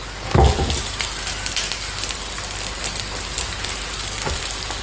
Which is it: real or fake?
real